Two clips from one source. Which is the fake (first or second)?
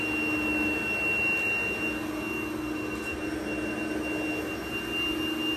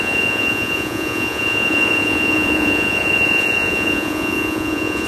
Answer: second